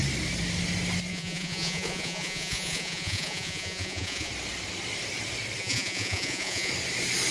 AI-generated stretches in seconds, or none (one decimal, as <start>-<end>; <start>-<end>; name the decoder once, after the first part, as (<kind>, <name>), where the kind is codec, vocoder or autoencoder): 1.1-4.3 (vocoder, Vocos); 5.6-6.7